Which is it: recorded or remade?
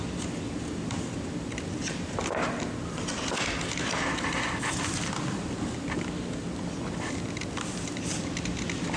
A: recorded